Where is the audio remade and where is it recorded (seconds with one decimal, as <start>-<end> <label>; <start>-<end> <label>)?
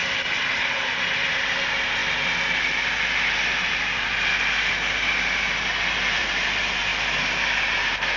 0.0-2.0 remade; 2.0-3.5 recorded; 3.5-6.9 remade; 6.9-7.7 recorded; 7.7-8.2 remade